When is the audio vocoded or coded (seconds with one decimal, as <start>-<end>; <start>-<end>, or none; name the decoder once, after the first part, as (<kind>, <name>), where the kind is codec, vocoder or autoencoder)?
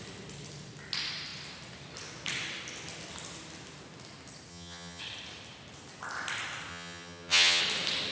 4.5-5.0 (vocoder, HiFi-GAN); 6.7-7.6